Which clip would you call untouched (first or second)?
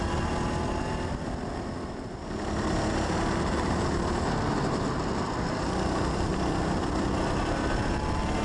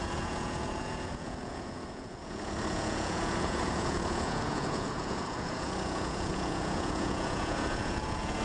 first